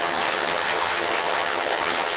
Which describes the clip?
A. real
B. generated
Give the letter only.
B